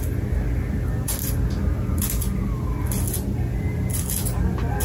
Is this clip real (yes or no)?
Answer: yes